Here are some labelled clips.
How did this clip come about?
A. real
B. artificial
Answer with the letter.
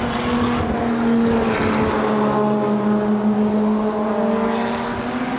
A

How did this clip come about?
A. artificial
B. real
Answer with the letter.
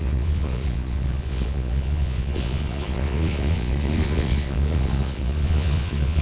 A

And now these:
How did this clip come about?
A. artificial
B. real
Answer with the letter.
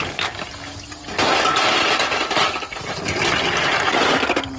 B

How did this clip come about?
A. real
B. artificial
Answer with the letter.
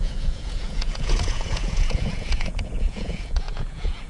B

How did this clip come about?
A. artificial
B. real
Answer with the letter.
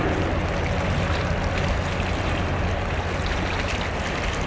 B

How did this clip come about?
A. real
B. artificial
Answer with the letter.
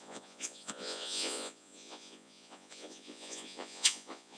B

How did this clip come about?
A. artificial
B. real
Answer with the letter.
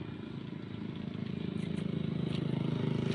B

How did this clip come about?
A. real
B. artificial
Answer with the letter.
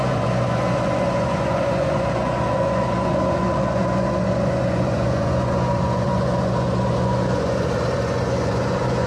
B